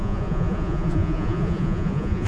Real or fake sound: fake